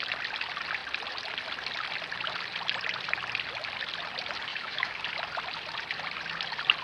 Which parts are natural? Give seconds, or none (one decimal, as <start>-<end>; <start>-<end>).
0.0-4.5; 5.0-6.8